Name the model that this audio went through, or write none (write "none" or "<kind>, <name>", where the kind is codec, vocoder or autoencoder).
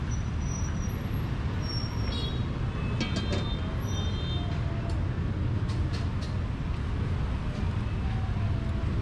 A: none